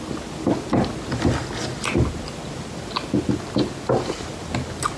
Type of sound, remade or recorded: recorded